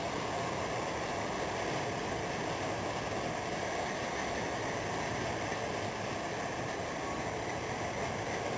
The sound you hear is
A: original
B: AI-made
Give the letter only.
A